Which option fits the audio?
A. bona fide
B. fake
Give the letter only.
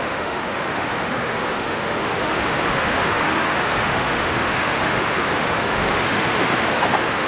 B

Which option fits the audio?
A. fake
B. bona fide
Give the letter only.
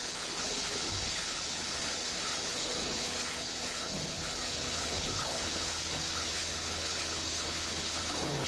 A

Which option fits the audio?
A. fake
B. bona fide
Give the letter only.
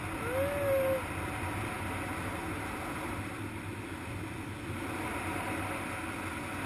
B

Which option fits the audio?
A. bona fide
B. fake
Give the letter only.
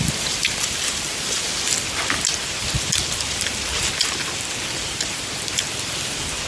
A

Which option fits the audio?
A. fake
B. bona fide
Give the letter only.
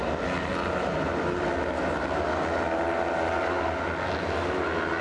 B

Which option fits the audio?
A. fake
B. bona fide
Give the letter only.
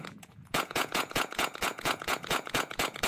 A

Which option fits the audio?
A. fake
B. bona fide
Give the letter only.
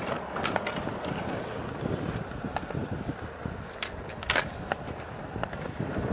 B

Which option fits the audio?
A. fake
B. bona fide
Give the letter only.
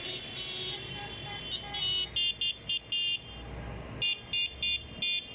B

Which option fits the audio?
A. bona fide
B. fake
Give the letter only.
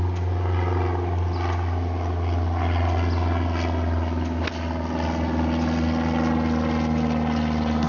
A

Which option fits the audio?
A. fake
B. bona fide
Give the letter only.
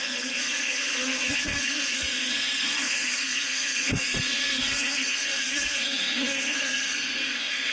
A